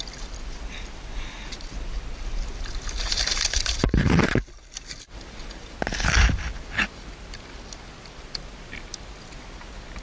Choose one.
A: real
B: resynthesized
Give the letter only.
A